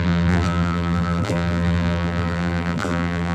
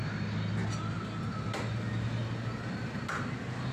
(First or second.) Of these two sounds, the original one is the second